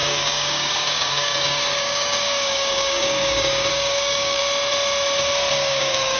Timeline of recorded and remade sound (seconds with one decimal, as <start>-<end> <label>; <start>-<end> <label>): 0.0-4.4 remade; 4.4-5.6 recorded; 5.6-6.2 remade